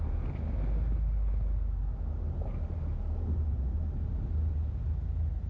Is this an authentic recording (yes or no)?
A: yes